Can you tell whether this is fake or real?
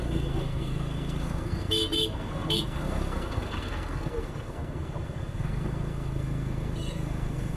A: fake